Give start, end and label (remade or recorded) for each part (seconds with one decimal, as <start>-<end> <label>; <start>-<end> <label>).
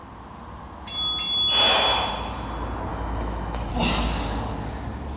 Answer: 0.0-2.9 recorded; 2.9-3.7 remade; 3.7-5.2 recorded